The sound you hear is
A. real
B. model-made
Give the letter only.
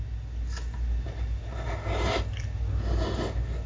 A